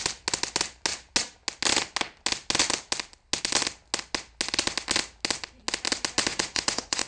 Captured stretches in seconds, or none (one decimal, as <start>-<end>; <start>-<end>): 0.0-6.3